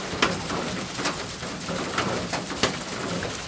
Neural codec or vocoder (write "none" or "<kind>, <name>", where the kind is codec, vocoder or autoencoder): none